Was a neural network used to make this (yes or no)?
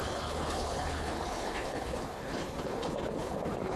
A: yes